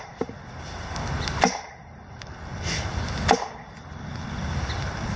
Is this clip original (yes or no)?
yes